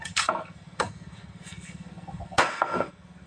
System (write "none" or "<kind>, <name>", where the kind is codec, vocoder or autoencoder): codec, SNAC